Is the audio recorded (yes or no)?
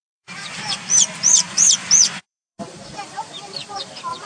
no